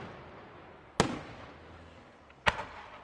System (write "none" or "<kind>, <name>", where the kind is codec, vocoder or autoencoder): none